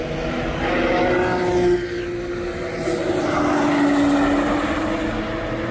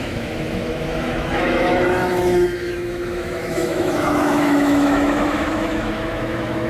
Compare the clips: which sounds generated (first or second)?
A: second